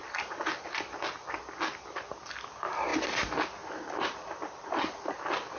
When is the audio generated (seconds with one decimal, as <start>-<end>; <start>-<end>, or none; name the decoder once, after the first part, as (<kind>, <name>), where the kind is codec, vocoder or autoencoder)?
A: none